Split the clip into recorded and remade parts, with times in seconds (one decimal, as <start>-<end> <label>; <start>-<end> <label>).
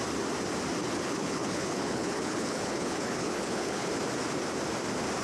0.0-0.8 recorded; 0.8-3.9 remade; 3.9-5.2 recorded